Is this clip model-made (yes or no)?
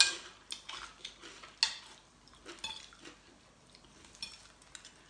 no